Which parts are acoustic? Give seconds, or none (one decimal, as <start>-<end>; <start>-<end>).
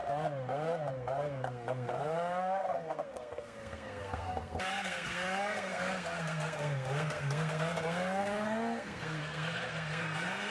none